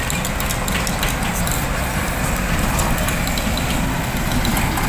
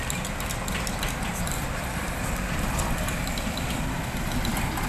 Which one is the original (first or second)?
first